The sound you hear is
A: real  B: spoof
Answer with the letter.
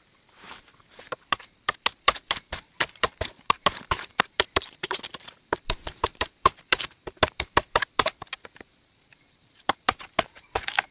B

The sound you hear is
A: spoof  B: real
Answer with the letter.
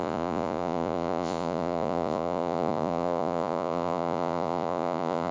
A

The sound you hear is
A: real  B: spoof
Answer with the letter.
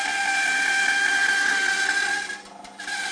A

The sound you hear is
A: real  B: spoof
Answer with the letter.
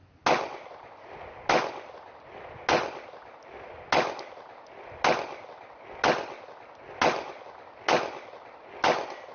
A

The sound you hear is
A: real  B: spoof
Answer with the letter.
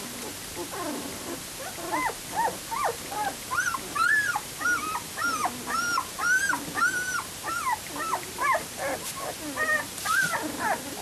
A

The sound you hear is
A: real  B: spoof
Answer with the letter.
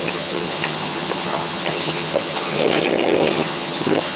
B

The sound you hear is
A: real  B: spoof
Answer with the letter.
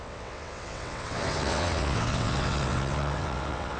B